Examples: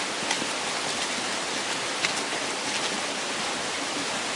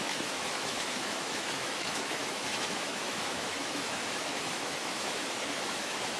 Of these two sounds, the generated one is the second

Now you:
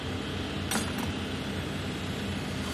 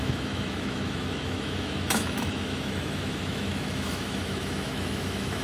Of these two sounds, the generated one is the second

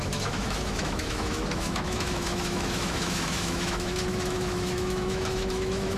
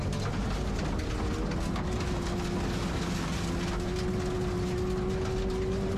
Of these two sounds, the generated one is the first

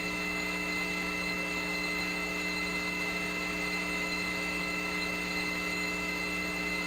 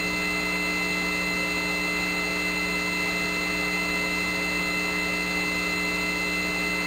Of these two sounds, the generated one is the first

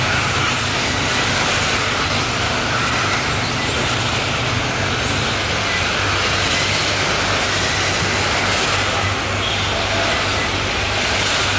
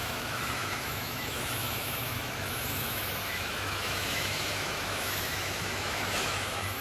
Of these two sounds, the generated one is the second